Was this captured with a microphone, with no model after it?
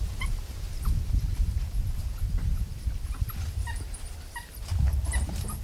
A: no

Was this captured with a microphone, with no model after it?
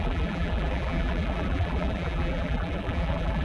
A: no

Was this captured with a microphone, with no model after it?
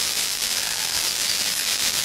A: no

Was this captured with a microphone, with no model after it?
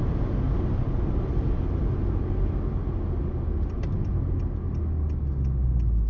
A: yes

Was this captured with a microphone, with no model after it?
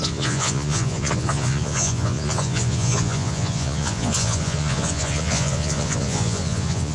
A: no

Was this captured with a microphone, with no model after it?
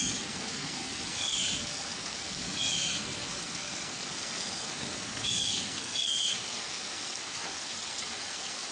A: no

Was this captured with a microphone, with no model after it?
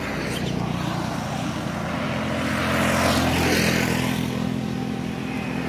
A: yes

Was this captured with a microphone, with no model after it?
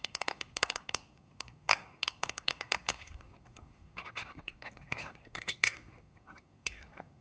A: no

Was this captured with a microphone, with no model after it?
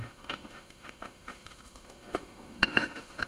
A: no